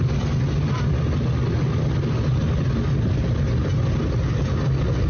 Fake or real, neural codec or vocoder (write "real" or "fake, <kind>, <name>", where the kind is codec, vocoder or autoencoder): real